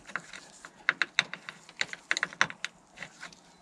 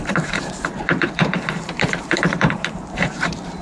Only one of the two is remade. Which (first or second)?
second